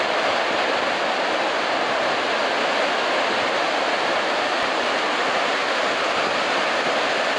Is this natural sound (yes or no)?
yes